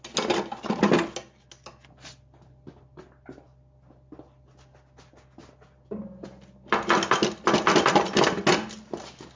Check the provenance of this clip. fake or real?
real